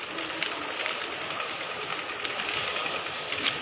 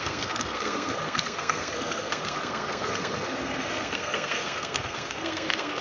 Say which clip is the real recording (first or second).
first